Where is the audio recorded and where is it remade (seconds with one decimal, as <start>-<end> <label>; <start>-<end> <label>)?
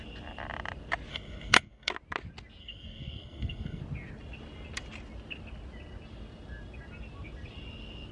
0.0-1.1 recorded; 1.1-1.9 remade; 1.9-2.6 recorded; 2.6-3.8 remade; 3.8-8.1 recorded